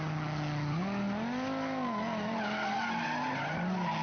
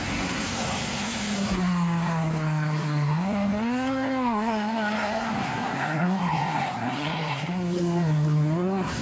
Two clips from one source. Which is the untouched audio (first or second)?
first